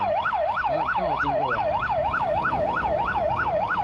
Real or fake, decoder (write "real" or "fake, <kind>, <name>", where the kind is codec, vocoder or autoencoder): fake, codec, DAC